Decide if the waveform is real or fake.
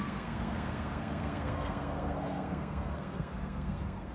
fake